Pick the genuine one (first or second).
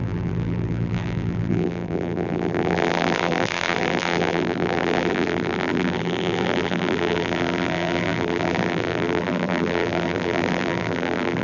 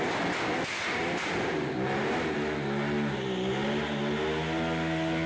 second